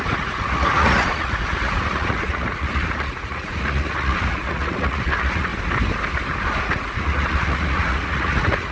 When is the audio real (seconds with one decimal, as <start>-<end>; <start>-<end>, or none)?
5.5-6.6